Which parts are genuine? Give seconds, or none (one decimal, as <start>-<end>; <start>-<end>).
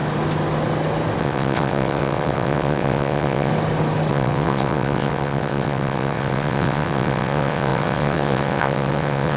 0.0-1.2; 3.5-4.1